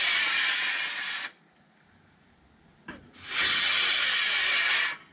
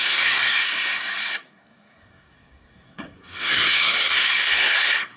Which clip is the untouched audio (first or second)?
first